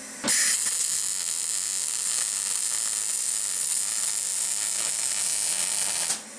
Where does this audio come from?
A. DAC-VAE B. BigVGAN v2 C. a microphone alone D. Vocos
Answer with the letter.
C